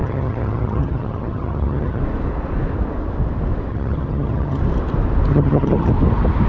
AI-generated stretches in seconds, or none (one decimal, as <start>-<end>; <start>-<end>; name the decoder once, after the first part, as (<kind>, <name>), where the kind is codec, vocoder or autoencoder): 0.0-2.0 (vocoder, HiFi-GAN); 3.7-4.6; 5.3-5.9